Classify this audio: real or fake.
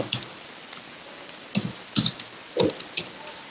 real